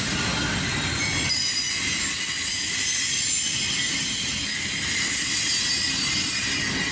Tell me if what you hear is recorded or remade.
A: recorded